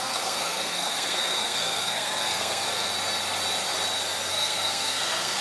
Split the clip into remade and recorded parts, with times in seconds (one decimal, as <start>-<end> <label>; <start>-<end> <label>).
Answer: 0.0-2.9 remade; 2.9-4.3 recorded; 4.3-5.4 remade